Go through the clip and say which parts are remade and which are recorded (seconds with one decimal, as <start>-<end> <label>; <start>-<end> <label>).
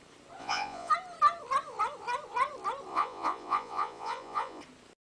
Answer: 0.0-0.4 recorded; 0.4-0.9 remade; 0.9-2.9 recorded; 2.9-4.6 remade; 4.6-5.1 recorded